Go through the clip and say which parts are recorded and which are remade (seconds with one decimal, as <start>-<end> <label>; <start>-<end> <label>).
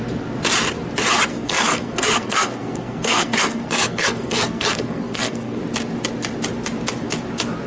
0.0-1.3 recorded; 1.3-5.6 remade; 5.6-7.7 recorded